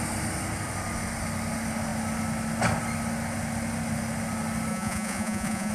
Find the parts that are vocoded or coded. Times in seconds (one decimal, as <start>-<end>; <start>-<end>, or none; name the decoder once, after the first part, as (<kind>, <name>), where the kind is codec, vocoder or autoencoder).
4.7-5.7 (vocoder, Vocos)